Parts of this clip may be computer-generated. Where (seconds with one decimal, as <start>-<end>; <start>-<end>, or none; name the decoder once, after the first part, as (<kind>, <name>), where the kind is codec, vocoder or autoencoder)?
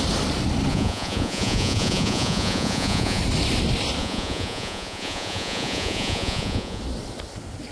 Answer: 0.7-3.2 (vocoder, Vocos); 4.0-6.8